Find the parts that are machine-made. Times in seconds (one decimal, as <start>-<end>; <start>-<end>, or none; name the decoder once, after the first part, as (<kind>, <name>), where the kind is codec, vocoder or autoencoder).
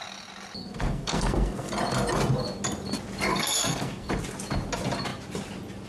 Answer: 0.6-1.7 (codec, SNAC); 3.3-4.1